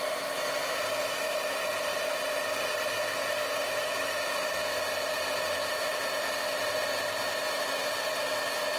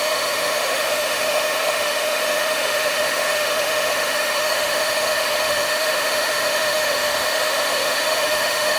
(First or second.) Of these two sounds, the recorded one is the first